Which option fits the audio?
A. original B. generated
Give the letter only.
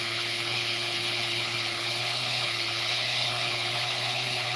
B